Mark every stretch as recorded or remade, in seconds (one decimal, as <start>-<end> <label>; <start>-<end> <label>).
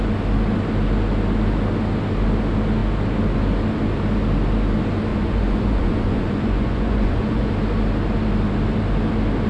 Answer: 0.0-5.1 recorded; 5.1-7.5 remade; 7.5-9.5 recorded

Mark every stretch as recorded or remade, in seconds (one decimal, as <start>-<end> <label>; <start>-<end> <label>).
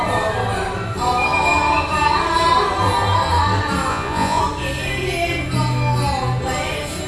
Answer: 0.0-3.9 recorded; 3.9-4.4 remade; 4.4-7.1 recorded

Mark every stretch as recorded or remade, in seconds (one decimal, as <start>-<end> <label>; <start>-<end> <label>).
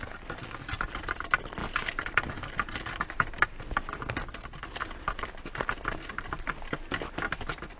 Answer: 0.0-7.8 recorded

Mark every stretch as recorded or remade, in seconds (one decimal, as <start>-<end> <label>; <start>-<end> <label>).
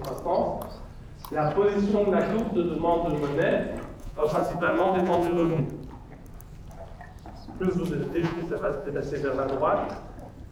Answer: 0.0-4.0 recorded; 4.0-5.6 remade; 5.6-8.0 recorded; 8.0-8.9 remade; 8.9-10.5 recorded